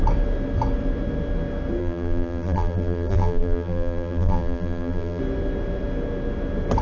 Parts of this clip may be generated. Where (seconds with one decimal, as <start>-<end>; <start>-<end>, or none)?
1.8-5.2